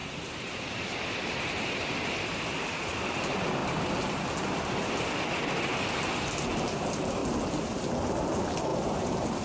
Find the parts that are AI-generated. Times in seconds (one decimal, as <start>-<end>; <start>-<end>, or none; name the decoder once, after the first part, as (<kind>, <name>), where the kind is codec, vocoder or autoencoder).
0.0-2.4 (vocoder, BigVGAN v2); 8.7-9.4